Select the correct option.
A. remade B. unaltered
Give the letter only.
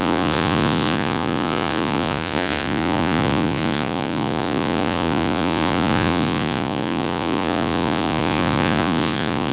A